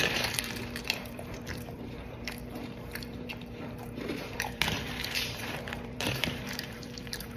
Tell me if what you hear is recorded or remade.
remade